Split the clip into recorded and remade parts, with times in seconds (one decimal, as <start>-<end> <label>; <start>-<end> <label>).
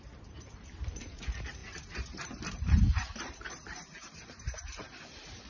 0.0-5.5 remade